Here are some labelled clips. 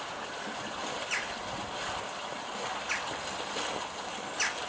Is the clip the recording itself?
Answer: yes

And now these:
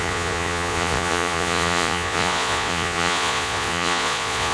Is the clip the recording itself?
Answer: no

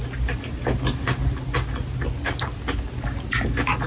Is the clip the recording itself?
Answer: yes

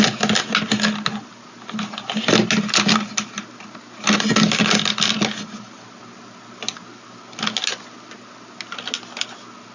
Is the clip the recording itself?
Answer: yes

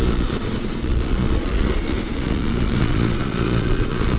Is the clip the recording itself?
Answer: no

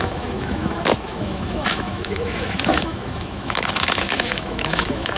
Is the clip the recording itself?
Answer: no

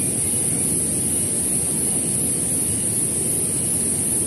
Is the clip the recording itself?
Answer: yes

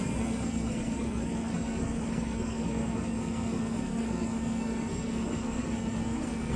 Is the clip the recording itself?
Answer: no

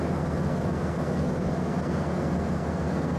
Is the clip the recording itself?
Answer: no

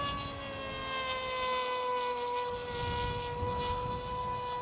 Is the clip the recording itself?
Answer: yes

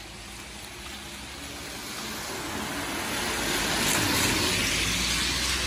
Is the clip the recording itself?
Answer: yes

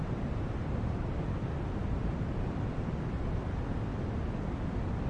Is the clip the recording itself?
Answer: no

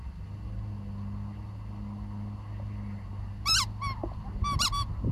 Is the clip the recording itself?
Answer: yes